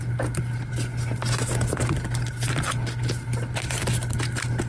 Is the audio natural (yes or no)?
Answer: yes